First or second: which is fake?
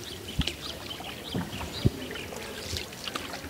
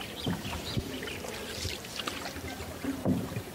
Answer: second